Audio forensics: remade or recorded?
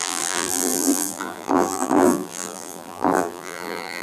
remade